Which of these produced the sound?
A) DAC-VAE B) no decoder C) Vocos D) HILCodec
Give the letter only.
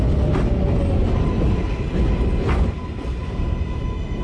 B